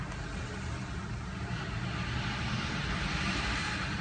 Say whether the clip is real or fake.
real